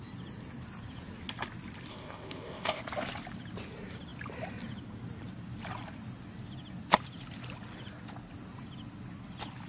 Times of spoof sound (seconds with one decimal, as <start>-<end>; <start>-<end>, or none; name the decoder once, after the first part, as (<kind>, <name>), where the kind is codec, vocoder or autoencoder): 1.9-2.8 (codec, ZipCodec)